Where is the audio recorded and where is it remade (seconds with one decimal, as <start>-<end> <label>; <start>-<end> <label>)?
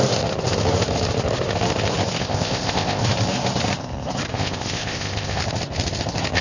0.0-2.2 recorded; 2.2-3.0 remade; 3.0-4.3 recorded; 4.3-5.4 remade; 5.4-6.4 recorded